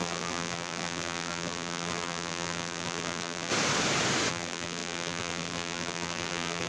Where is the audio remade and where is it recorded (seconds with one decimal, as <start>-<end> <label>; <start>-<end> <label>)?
0.0-3.5 remade; 3.5-4.3 recorded; 4.3-6.7 remade

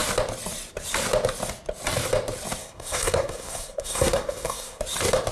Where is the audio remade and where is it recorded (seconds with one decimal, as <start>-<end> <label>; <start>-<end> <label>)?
0.0-2.6 recorded; 2.6-4.8 remade; 4.8-5.3 recorded

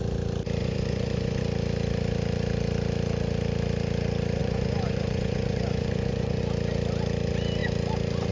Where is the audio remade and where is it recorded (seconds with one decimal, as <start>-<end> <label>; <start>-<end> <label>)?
0.0-0.6 recorded; 0.6-1.4 remade; 1.4-4.4 recorded; 4.4-6.4 remade; 6.4-8.3 recorded

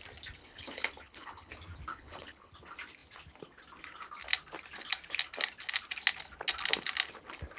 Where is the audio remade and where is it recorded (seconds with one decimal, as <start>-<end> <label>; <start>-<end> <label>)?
0.0-0.4 recorded; 0.4-1.5 remade; 1.5-1.9 recorded; 1.9-2.5 remade; 2.5-7.6 recorded

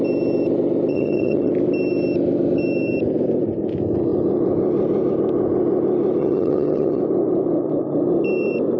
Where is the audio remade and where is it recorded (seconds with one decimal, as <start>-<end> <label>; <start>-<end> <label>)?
0.0-0.9 recorded; 0.9-1.5 remade; 1.5-6.2 recorded; 6.2-7.0 remade; 7.0-8.8 recorded

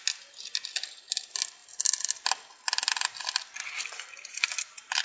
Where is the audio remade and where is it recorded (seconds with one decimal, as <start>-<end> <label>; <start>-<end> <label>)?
0.0-5.0 recorded

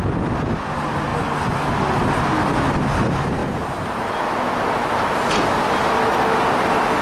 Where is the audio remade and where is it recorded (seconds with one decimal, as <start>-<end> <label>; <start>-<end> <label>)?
0.0-7.0 recorded

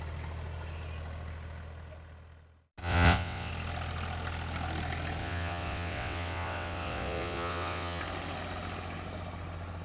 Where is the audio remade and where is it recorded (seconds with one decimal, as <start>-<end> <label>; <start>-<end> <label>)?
0.0-2.8 recorded; 2.8-3.5 remade; 3.5-5.2 recorded; 5.2-8.0 remade; 8.0-9.8 recorded